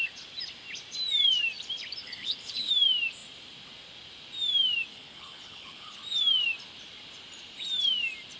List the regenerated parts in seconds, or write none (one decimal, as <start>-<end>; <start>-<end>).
2.0-2.7; 4.9-6.0